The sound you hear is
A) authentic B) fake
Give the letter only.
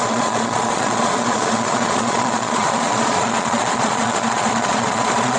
B